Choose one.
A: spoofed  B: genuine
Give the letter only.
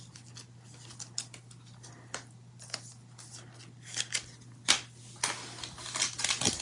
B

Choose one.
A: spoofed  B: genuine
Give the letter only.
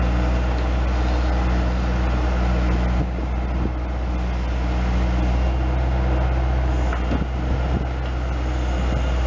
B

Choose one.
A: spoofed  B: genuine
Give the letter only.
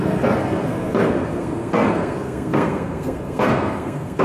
A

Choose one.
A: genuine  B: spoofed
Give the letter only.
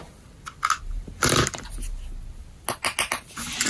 A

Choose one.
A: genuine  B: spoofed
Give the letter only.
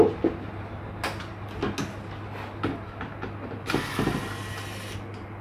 A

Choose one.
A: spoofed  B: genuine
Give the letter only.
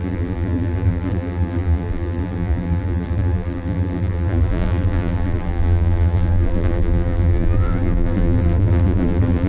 A